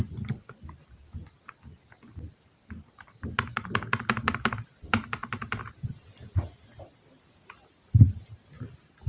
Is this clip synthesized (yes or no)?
no